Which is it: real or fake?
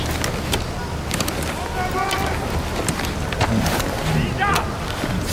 real